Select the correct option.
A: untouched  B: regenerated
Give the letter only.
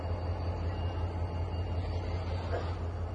A